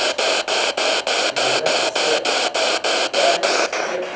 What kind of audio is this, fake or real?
real